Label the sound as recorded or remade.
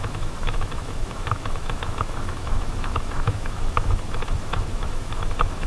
remade